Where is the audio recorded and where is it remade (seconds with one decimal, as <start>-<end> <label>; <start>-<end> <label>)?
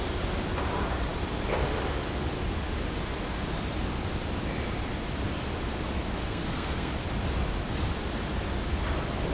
0.0-6.2 recorded; 6.2-6.9 remade; 6.9-9.3 recorded